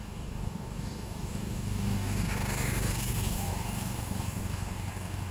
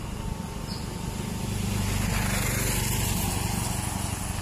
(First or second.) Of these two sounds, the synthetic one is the first